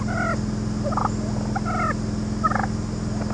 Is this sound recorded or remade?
recorded